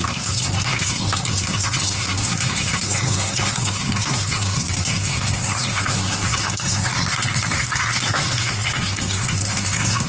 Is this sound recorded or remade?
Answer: remade